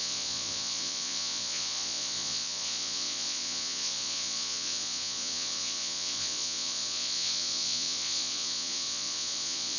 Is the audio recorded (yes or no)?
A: no